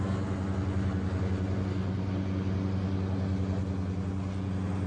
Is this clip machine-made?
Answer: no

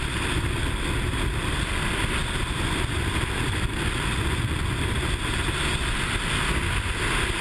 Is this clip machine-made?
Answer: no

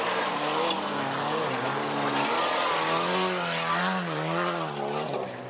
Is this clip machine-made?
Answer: no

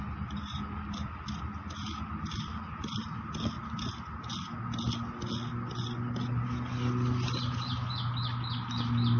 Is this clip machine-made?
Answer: no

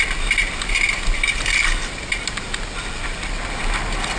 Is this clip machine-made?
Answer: no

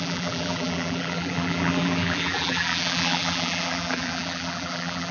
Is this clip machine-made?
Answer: yes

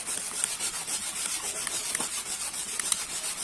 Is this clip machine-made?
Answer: no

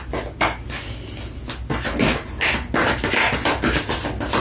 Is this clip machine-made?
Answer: no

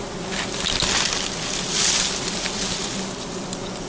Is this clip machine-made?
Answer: no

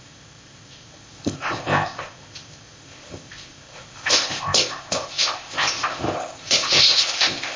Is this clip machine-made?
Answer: yes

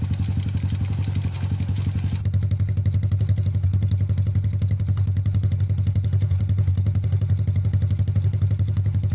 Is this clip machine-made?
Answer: no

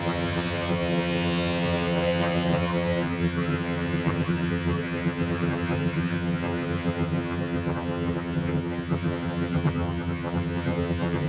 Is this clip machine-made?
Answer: yes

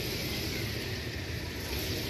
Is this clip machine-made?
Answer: yes